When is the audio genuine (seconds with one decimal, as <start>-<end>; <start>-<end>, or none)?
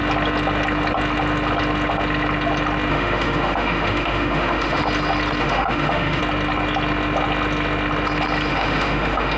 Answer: 0.0-2.9; 4.8-5.4; 6.2-8.5